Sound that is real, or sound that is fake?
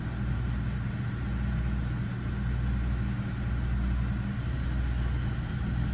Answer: real